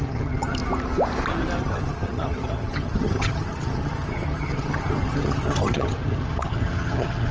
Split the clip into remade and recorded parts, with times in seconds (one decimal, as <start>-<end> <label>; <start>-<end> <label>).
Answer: 0.0-0.6 remade; 0.6-1.6 recorded; 1.6-7.3 remade